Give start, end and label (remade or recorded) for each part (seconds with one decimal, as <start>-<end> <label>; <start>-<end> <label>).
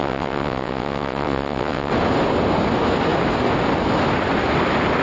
0.0-1.9 remade; 1.9-5.0 recorded